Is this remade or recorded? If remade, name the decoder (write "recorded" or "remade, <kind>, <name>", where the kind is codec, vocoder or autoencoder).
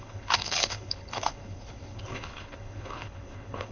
remade, codec, HILCodec